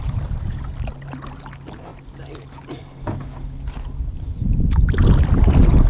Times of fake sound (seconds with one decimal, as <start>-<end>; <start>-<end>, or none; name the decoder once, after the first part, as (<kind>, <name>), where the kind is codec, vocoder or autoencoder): none